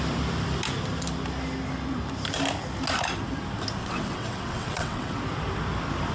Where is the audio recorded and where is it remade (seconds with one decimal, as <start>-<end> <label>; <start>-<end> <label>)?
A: 0.0-3.8 recorded; 3.8-5.2 remade; 5.2-6.1 recorded

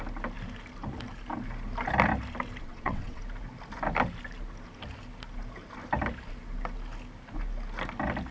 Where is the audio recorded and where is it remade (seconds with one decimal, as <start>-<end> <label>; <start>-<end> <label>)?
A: 0.0-2.6 recorded; 2.6-3.2 remade; 3.2-8.3 recorded